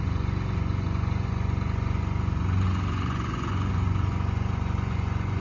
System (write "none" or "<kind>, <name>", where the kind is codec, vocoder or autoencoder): vocoder, Vocos